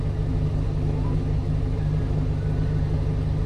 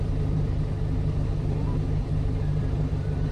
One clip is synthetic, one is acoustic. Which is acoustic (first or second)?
first